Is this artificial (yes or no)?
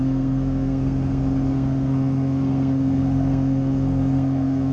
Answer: yes